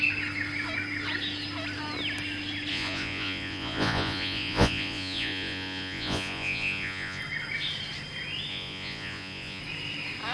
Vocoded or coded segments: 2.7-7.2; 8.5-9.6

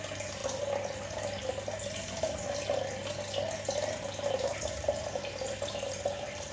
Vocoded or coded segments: 0.0-0.4; 4.3-6.5

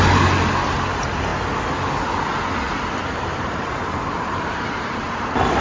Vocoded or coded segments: 3.0-5.6